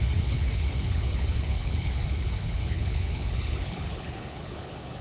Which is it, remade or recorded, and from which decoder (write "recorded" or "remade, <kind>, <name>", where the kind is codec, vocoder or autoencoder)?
remade, codec, HILCodec